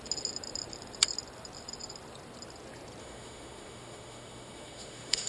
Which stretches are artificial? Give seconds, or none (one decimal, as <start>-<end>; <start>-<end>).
3.0-5.3

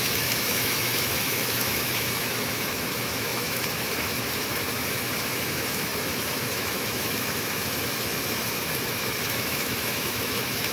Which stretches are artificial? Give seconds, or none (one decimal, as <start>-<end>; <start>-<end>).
0.0-10.7

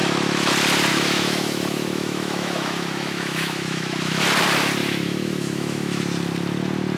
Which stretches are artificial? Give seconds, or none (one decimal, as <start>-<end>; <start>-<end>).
0.0-0.5; 0.9-4.2; 4.8-6.0

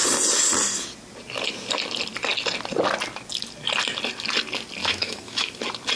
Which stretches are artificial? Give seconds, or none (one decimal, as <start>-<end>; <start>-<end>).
4.8-5.6